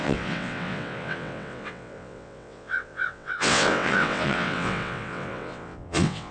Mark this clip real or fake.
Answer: fake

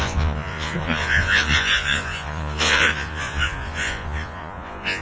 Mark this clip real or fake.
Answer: fake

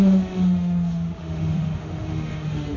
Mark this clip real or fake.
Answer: fake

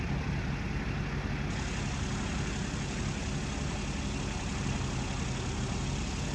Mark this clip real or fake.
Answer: real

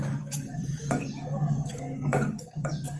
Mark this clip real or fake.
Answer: fake